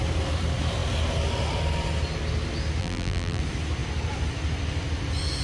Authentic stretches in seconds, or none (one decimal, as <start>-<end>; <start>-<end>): 0.0-2.8; 3.4-5.4